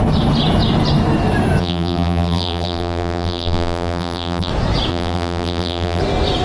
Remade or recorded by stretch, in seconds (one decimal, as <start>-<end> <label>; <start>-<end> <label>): 0.0-1.6 recorded; 1.6-4.5 remade; 4.5-4.9 recorded; 4.9-6.0 remade; 6.0-6.4 recorded